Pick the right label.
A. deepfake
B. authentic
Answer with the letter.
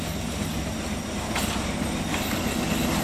B